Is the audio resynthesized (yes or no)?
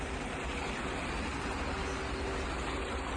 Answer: no